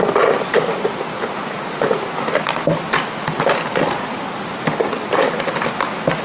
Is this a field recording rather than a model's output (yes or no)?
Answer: yes